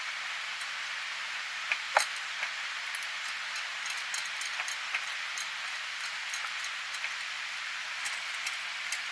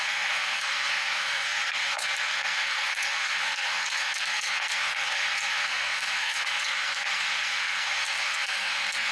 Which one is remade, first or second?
second